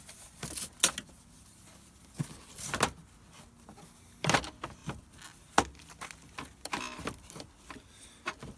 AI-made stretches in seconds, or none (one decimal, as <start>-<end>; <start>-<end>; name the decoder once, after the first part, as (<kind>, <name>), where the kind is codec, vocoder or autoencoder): none